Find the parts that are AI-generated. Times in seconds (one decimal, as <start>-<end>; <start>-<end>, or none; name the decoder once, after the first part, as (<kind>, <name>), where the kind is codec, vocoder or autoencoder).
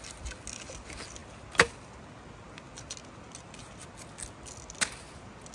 none